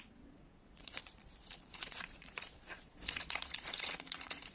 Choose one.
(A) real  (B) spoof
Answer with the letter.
B